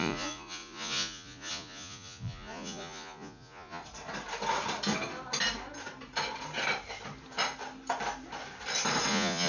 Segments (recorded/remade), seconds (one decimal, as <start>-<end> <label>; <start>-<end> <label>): 0.0-3.8 remade; 3.8-9.1 recorded; 9.1-9.5 remade